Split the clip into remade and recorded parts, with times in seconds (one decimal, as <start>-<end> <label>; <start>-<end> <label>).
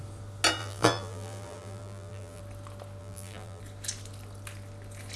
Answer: 0.0-0.6 recorded; 0.6-2.4 remade; 2.4-3.0 recorded; 3.0-3.6 remade; 3.6-5.2 recorded